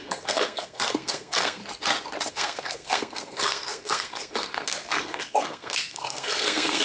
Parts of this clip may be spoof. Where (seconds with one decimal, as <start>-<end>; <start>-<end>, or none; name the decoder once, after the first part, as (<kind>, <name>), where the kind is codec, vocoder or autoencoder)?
0.0-1.6 (codec, SNAC); 2.3-6.8